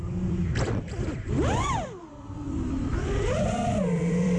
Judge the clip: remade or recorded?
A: remade